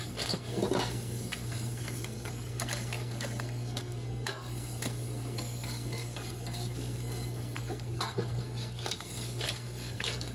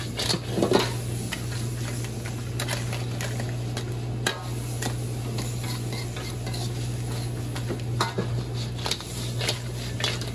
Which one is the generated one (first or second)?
first